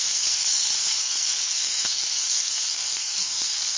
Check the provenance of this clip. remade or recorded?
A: remade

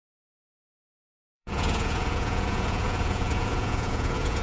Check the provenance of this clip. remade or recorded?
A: remade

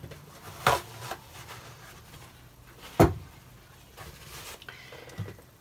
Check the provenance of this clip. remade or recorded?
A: recorded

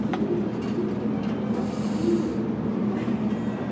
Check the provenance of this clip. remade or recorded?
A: recorded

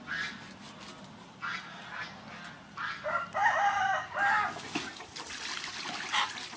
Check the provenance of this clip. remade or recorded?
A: recorded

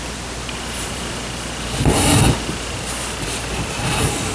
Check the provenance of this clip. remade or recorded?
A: recorded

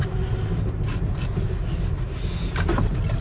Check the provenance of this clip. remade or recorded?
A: recorded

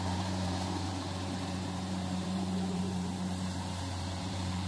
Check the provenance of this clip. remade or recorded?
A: remade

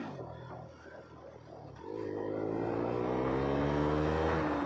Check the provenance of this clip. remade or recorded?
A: recorded